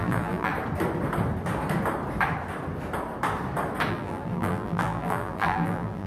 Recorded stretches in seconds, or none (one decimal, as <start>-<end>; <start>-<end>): 0.5-3.9

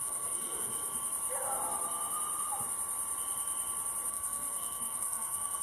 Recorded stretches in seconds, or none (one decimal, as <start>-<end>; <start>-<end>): 0.7-4.1